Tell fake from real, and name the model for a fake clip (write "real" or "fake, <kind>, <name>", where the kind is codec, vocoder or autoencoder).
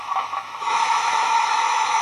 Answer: fake, autoencoder, DAC-VAE